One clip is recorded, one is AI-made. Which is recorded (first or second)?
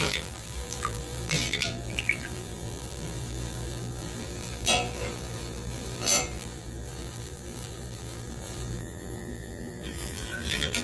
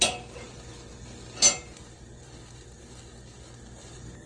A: second